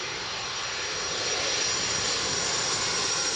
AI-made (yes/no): no